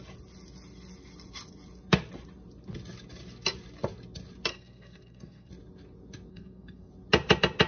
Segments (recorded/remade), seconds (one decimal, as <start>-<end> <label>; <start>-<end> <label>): 0.0-4.5 recorded; 4.5-5.5 remade; 5.5-6.3 recorded; 6.3-6.9 remade; 6.9-7.7 recorded